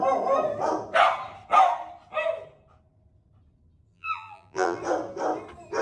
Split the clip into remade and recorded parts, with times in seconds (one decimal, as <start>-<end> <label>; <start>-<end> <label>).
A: 0.0-3.9 recorded; 3.9-4.8 remade; 4.8-5.8 recorded